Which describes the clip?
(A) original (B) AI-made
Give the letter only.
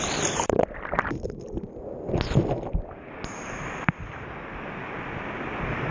A